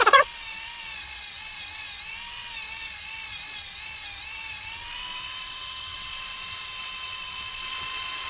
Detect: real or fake fake